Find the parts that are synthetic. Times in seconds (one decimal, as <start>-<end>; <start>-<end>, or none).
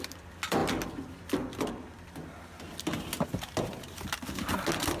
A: none